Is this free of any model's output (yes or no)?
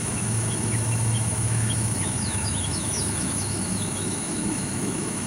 no